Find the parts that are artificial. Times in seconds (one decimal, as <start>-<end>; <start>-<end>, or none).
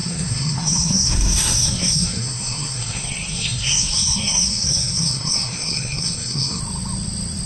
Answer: 0.0-6.6